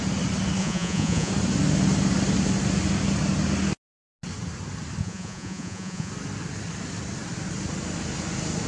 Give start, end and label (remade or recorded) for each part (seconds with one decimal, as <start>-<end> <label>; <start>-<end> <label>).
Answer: 0.0-0.6 recorded; 0.6-1.3 remade; 1.3-5.0 recorded; 5.0-6.1 remade; 6.1-8.7 recorded